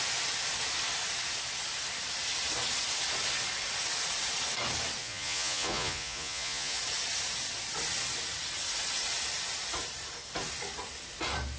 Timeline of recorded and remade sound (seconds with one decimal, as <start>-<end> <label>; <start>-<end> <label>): 0.0-5.0 recorded; 5.0-6.8 remade; 6.8-11.6 recorded